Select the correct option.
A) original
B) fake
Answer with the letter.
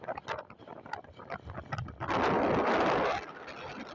A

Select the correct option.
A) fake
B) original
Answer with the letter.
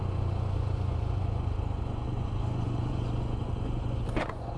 A